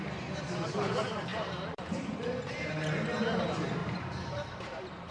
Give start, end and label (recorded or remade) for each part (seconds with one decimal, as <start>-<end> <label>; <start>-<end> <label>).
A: 0.0-1.3 recorded; 1.3-2.7 remade; 2.7-3.8 recorded; 3.8-5.1 remade